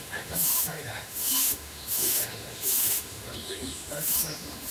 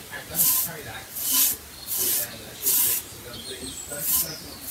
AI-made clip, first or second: first